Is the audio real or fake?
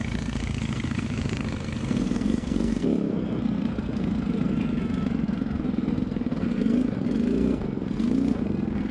fake